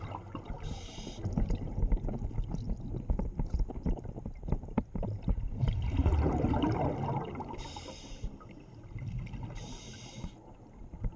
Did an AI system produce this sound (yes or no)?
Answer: no